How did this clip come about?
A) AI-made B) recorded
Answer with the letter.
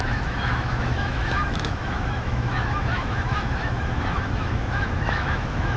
A